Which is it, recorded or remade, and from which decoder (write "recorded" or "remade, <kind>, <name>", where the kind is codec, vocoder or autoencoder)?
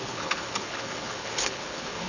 remade, codec, HILCodec